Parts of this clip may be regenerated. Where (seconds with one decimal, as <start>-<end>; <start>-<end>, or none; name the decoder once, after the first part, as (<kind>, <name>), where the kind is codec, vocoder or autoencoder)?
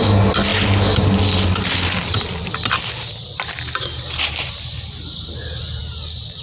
none